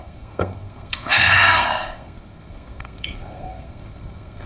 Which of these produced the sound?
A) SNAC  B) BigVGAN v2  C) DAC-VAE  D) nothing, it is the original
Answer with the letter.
A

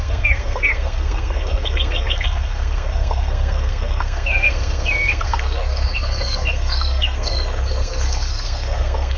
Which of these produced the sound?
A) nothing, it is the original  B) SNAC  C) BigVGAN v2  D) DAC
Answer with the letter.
B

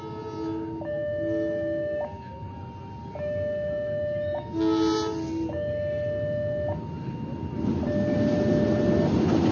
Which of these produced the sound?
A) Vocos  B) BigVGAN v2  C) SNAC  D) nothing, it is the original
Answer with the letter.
D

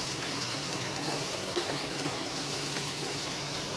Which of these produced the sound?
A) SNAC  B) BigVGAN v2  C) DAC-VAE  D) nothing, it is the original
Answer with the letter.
A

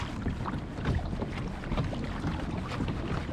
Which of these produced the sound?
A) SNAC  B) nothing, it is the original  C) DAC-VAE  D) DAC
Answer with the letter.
B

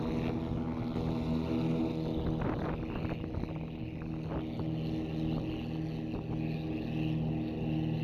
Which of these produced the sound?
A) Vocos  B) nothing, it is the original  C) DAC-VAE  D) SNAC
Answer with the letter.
B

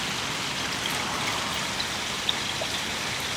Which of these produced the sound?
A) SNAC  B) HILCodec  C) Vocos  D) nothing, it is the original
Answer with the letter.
D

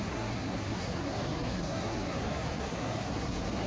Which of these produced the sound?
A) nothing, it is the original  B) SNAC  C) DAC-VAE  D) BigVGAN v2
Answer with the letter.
B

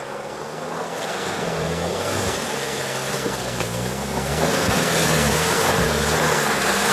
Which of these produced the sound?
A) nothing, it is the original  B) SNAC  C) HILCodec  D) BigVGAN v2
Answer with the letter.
B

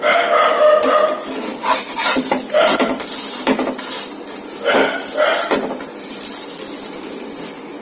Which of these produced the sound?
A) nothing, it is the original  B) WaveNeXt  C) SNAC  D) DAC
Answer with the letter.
A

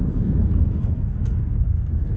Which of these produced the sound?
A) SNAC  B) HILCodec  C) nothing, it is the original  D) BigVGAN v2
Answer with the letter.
A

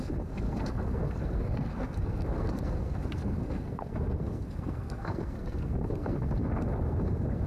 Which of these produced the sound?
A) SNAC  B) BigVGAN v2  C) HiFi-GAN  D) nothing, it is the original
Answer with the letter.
A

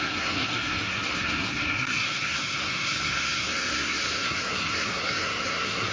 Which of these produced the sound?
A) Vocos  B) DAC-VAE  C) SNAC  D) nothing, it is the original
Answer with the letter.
C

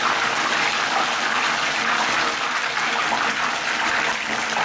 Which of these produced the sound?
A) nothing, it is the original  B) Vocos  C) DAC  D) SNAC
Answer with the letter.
A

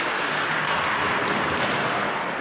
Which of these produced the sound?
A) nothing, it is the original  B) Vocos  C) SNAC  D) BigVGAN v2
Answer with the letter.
A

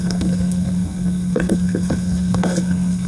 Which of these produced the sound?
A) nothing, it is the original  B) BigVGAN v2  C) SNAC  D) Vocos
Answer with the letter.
C